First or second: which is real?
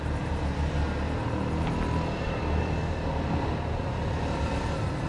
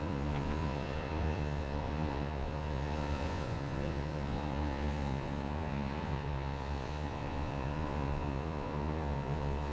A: first